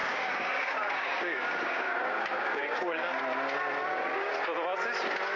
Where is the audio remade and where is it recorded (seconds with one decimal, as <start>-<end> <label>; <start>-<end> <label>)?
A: 0.0-3.2 remade; 3.2-3.8 recorded; 3.8-4.3 remade; 4.3-5.4 recorded